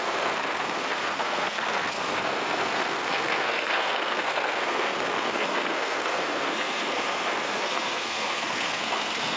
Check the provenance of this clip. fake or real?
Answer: fake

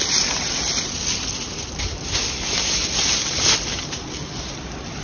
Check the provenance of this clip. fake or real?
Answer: real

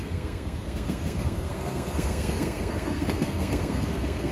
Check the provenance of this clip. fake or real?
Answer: fake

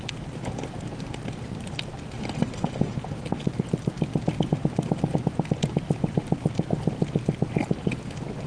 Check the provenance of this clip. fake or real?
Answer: real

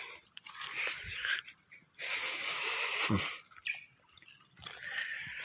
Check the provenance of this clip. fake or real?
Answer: real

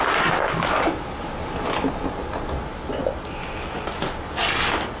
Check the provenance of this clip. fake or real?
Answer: real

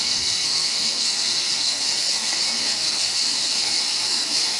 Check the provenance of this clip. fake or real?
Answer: fake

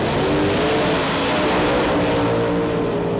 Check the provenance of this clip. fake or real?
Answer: real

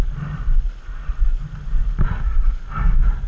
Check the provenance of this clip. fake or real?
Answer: real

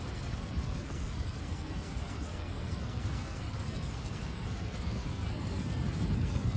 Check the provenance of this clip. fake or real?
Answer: fake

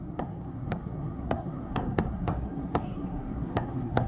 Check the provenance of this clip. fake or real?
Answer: fake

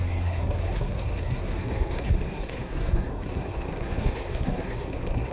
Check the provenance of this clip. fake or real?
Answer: fake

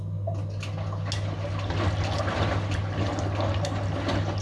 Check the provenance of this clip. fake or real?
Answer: real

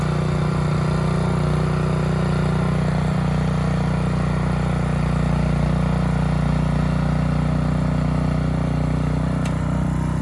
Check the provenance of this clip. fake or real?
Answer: real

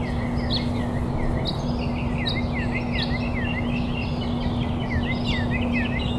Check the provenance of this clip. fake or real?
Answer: real